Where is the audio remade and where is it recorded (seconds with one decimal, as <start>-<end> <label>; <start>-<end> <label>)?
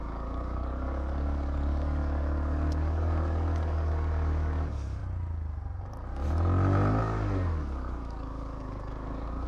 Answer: 0.0-5.0 remade; 5.0-7.0 recorded; 7.0-9.5 remade